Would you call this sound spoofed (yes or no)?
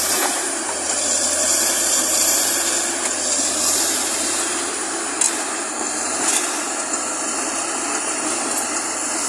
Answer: yes